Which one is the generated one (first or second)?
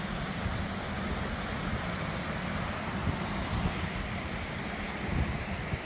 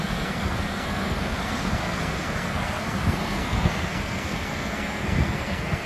second